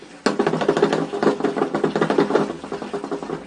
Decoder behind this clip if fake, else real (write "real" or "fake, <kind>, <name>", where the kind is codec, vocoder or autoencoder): real